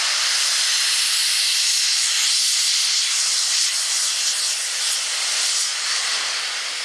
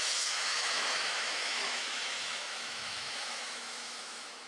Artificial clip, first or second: second